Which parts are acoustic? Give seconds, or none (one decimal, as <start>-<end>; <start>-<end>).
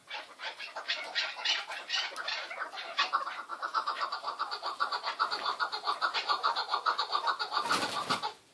1.9-3.5; 5.1-8.5